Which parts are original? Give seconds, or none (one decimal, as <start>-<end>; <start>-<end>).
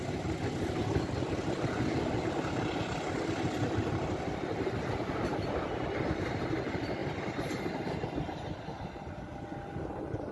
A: 0.0-5.3; 6.4-7.0; 8.5-10.3